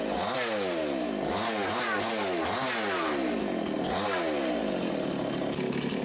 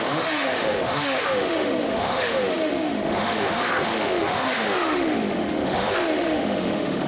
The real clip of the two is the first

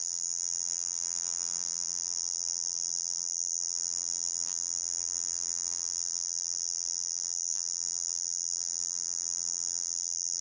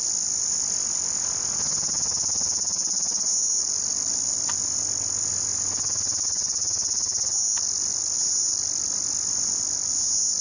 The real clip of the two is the second